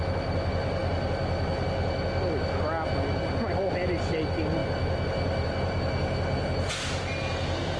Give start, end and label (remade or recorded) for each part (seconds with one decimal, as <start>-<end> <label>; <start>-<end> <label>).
0.0-7.8 recorded